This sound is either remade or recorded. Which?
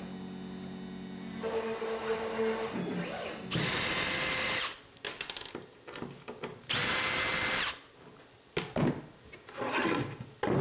recorded